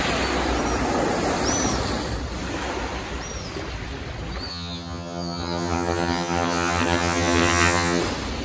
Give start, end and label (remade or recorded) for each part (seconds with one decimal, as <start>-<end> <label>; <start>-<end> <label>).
0.0-4.5 recorded; 4.5-8.0 remade; 8.0-8.4 recorded